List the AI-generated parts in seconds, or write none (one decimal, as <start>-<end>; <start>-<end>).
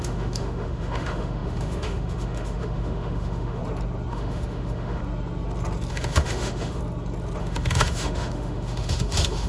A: 0.0-3.6; 4.1-5.0; 5.9-6.8; 7.4-9.5